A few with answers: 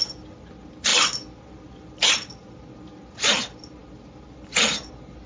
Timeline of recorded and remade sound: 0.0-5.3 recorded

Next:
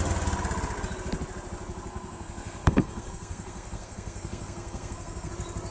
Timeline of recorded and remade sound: 0.0-1.9 recorded; 1.9-5.3 remade; 5.3-5.7 recorded

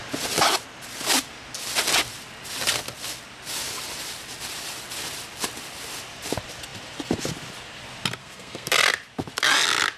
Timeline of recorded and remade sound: 0.0-8.2 recorded; 8.2-8.7 remade; 8.7-10.0 recorded

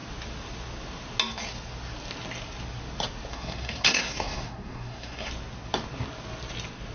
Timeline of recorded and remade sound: 0.0-3.3 recorded; 3.3-5.3 remade; 5.3-6.9 recorded

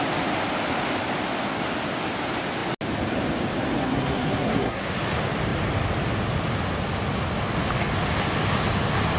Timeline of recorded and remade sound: 0.0-3.8 recorded; 3.8-4.8 remade; 4.8-9.2 recorded

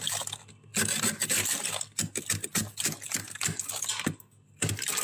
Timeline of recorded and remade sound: 0.0-5.0 recorded

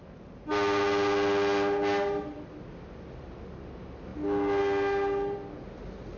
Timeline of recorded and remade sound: 0.0-6.2 recorded